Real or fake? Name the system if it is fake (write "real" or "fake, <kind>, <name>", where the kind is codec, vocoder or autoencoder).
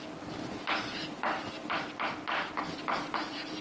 real